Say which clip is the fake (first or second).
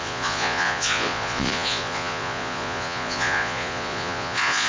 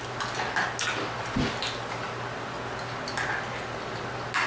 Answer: first